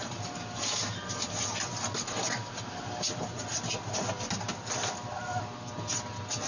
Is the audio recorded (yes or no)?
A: yes